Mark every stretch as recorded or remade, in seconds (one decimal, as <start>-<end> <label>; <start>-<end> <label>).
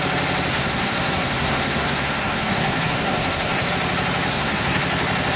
0.0-0.5 recorded; 0.5-3.7 remade; 3.7-4.3 recorded; 4.3-4.8 remade; 4.8-5.4 recorded